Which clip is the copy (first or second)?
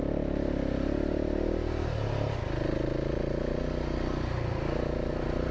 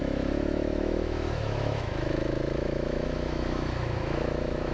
second